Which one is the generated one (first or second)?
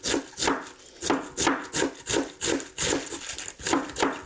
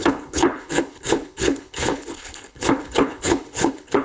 second